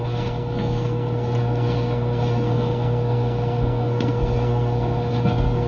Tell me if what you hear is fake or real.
fake